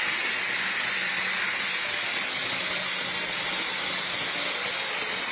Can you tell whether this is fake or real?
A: real